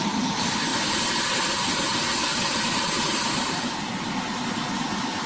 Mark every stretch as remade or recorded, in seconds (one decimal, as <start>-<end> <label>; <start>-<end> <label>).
0.0-0.7 recorded; 0.7-1.6 remade; 1.6-2.3 recorded; 2.3-4.0 remade; 4.0-5.3 recorded